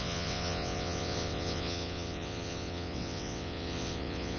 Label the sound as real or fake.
fake